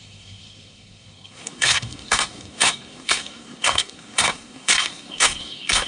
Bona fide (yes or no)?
no